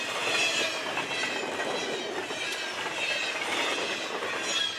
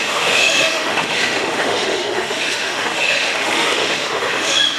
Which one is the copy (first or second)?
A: second